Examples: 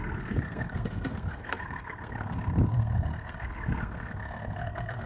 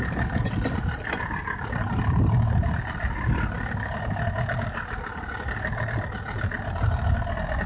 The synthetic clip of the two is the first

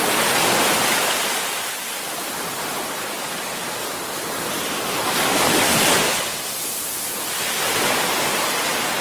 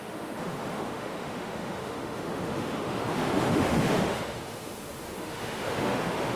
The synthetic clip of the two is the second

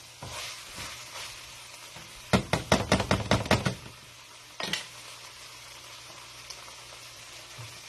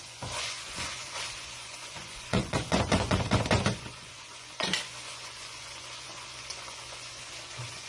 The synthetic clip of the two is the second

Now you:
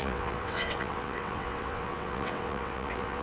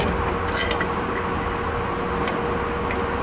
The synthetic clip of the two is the first